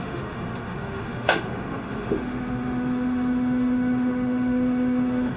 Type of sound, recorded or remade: remade